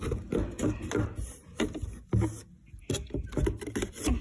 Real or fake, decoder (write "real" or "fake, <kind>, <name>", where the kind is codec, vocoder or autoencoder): real